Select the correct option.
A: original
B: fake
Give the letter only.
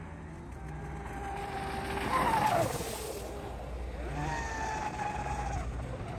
A